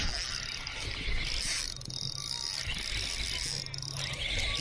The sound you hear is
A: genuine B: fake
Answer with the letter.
A